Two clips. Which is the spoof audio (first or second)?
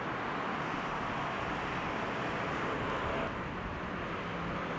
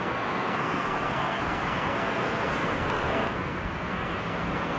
second